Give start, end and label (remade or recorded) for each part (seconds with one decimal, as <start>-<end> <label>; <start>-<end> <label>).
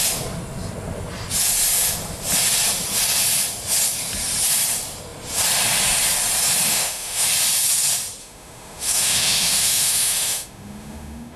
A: 0.0-6.7 recorded; 6.7-7.3 remade; 7.3-8.2 recorded; 8.2-11.4 remade